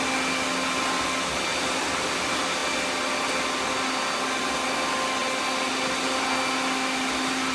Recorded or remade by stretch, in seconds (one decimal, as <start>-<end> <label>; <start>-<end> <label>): 0.0-7.5 recorded